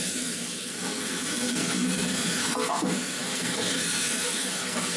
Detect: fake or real fake